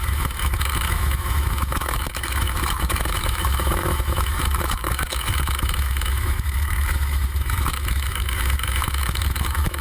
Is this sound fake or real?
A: fake